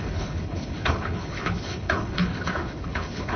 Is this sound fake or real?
fake